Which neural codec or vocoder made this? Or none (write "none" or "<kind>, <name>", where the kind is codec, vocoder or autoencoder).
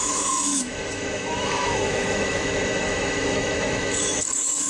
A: autoencoder, DAC-VAE